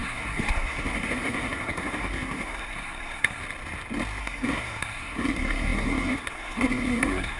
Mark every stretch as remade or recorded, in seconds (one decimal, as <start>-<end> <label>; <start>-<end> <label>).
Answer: 0.0-3.4 remade; 3.4-4.2 recorded; 4.2-7.4 remade

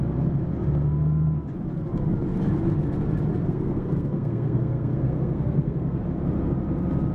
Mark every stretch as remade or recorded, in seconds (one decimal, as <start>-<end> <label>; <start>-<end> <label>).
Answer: 0.0-3.3 recorded; 3.3-6.0 remade; 6.0-7.1 recorded